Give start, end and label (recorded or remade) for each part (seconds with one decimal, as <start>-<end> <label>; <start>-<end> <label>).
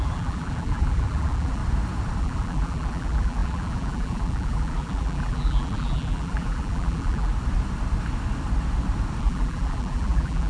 0.0-1.6 remade; 1.6-2.2 recorded; 2.2-7.3 remade; 7.3-9.2 recorded; 9.2-10.5 remade